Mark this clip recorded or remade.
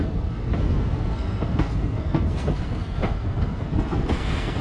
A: remade